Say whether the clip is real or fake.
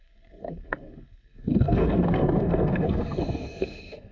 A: fake